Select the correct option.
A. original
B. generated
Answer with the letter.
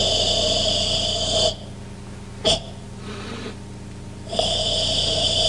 A